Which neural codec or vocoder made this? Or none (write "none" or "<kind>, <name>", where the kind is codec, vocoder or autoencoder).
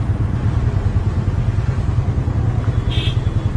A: none